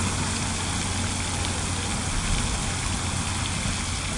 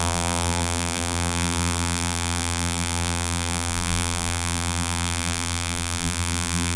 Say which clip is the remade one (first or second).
second